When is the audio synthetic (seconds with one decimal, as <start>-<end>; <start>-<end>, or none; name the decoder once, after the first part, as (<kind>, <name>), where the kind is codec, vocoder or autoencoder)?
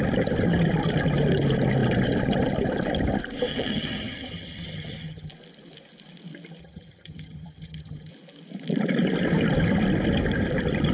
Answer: 3.5-5.3 (vocoder, HiFi-GAN); 6.6-8.1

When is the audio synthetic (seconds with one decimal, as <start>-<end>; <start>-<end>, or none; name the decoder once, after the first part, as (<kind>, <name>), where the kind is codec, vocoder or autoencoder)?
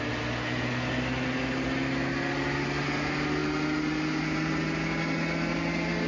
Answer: none